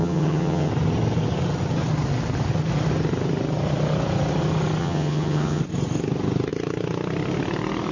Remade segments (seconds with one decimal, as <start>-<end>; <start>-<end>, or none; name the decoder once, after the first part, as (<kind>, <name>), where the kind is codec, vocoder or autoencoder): 0.0-0.7 (vocoder, HiFi-GAN); 4.8-5.6